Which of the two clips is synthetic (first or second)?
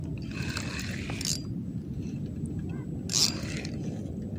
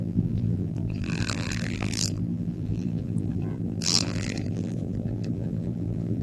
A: second